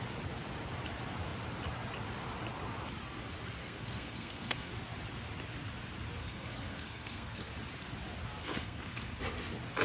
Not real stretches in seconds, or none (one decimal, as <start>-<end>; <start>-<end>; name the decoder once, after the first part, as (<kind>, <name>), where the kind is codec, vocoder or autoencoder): 3.6-4.7 (codec, SNAC); 6.2-7.5; 8.4-9.2